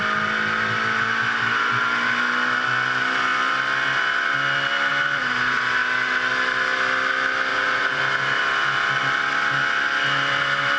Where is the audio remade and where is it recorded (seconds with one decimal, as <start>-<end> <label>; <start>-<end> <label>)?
0.0-7.5 recorded; 7.5-8.0 remade; 8.0-10.8 recorded

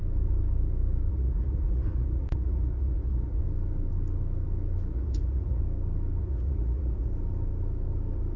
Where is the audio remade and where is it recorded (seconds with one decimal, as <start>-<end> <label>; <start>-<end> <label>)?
0.0-1.1 recorded; 1.1-3.4 remade; 3.4-4.9 recorded; 4.9-5.6 remade; 5.6-6.2 recorded; 6.2-7.1 remade; 7.1-8.4 recorded

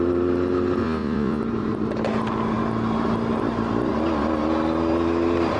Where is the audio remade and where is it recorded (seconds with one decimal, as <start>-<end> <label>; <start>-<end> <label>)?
0.0-0.8 recorded; 0.8-1.4 remade; 1.4-5.6 recorded

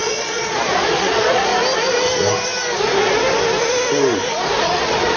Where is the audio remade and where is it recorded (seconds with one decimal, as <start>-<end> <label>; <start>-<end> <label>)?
0.0-1.5 remade; 1.5-4.6 recorded; 4.6-5.2 remade